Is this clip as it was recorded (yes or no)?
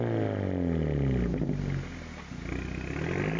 yes